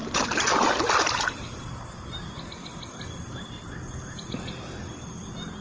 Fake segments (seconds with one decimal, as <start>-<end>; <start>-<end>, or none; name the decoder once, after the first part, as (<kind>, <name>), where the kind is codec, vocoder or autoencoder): none